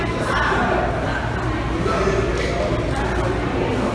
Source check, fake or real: real